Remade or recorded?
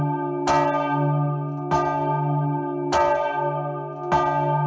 recorded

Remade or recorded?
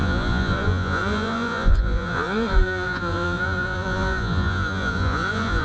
remade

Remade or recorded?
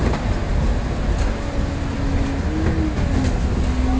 recorded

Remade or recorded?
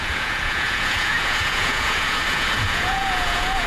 remade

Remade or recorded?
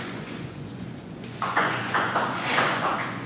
remade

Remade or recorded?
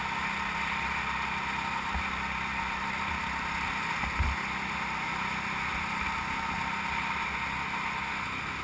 recorded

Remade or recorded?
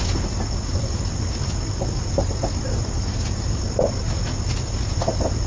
recorded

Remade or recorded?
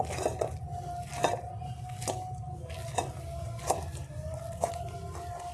recorded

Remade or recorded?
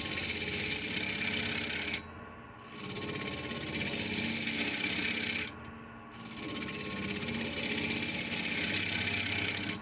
recorded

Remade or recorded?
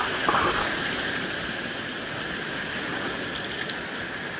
recorded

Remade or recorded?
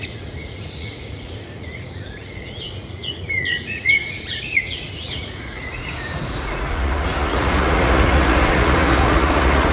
remade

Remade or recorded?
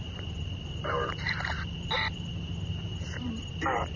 recorded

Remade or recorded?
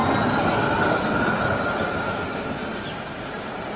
recorded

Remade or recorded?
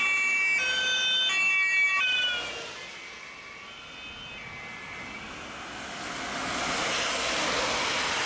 recorded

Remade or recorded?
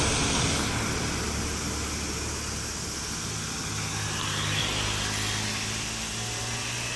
recorded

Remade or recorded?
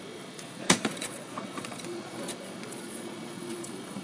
remade